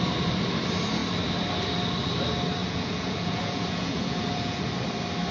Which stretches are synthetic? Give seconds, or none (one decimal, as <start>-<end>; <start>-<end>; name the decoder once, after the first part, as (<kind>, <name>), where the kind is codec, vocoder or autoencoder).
2.6-4.7 (vocoder, Vocos)